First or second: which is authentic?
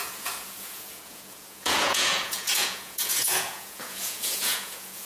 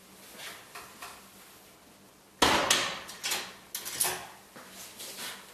second